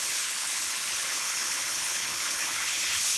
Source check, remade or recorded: remade